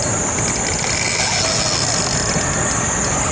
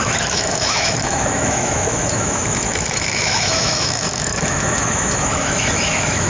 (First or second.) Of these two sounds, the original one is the first